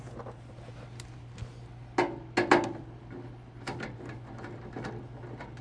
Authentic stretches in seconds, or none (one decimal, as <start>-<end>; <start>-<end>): 0.0-5.6